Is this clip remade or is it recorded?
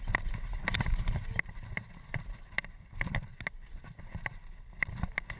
recorded